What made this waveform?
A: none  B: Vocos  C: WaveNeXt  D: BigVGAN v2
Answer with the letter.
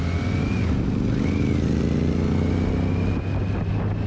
A